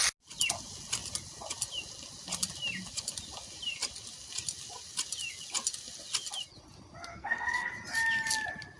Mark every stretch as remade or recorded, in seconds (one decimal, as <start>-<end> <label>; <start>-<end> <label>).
0.0-7.1 recorded; 7.1-7.7 remade; 7.7-8.8 recorded